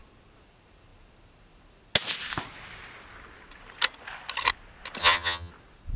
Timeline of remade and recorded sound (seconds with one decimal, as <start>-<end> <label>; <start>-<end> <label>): 0.0-5.0 recorded; 5.0-5.5 remade; 5.5-6.0 recorded

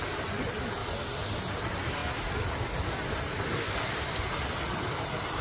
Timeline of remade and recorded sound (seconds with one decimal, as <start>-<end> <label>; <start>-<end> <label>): 0.0-0.8 remade; 0.8-1.6 recorded; 1.6-5.4 remade